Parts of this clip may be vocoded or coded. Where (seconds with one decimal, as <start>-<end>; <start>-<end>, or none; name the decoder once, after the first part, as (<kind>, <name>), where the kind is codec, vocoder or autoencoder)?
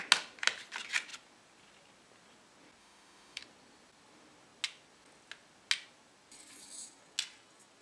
2.8-3.4 (autoencoder, DAC-VAE)